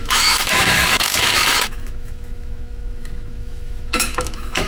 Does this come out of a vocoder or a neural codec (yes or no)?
yes